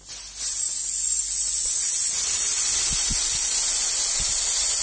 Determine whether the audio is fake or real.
real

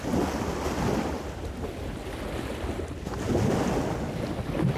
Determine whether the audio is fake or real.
real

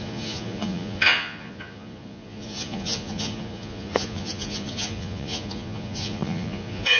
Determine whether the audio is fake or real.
fake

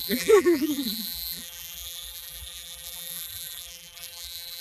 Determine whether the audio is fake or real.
fake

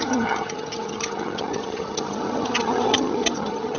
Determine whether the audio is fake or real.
fake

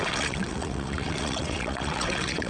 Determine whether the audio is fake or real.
fake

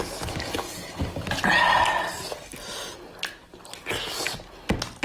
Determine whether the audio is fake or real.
real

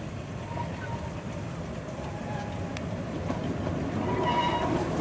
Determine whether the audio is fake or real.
real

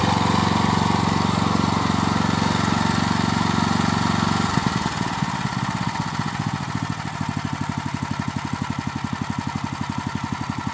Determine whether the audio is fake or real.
real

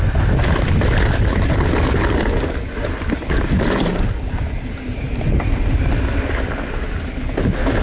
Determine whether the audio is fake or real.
real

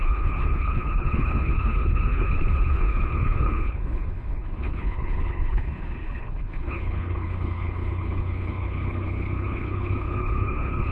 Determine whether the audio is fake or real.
fake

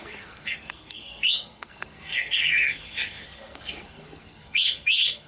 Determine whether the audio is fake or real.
fake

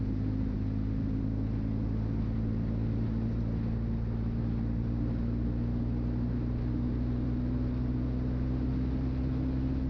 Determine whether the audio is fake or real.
real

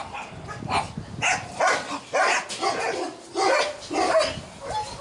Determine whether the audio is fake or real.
real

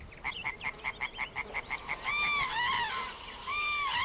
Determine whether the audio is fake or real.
fake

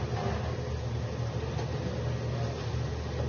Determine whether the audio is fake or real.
real